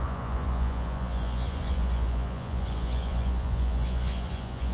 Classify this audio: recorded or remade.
remade